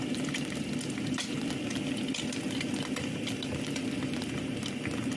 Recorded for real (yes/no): yes